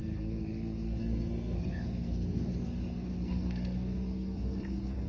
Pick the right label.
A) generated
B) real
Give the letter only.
A